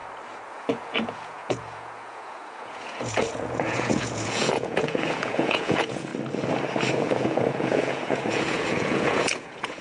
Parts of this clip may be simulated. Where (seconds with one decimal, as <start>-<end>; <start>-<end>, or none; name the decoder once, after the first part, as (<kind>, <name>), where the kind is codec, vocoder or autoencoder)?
0.5-6.1 (vocoder, Vocos); 6.9-9.8